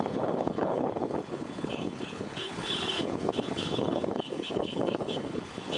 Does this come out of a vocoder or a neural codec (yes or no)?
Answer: yes